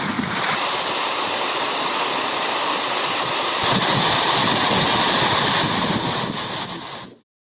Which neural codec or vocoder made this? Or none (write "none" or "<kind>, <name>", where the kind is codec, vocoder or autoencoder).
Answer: none